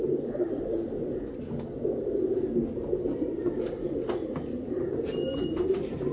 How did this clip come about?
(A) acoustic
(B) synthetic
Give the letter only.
A